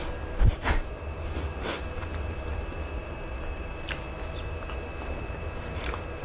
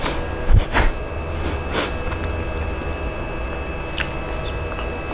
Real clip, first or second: second